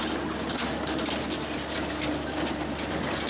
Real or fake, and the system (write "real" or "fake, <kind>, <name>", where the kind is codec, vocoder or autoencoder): real